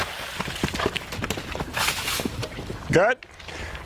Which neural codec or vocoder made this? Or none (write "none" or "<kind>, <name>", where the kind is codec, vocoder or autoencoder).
none